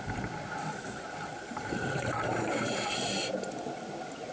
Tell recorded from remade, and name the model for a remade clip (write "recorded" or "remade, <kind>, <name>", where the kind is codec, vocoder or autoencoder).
recorded